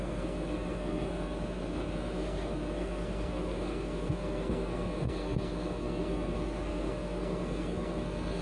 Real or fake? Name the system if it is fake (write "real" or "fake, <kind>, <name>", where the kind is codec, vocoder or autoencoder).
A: fake, codec, SNAC